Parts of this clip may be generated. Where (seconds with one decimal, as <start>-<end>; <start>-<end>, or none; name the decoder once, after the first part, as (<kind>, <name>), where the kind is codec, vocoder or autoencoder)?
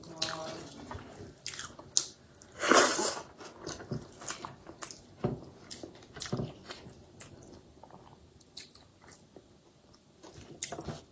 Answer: 8.9-10.6 (vocoder, BigVGAN v2)